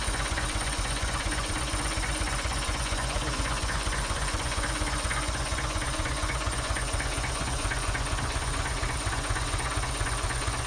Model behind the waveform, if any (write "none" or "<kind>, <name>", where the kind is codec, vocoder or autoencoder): vocoder, Vocos